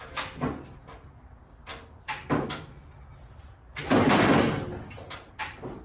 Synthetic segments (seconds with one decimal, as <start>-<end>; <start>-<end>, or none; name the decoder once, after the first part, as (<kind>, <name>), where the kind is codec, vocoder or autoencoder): none